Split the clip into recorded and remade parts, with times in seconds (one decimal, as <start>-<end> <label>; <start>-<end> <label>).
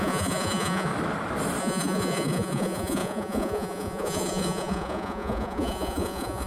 0.0-0.9 remade; 0.9-1.6 recorded; 1.6-6.5 remade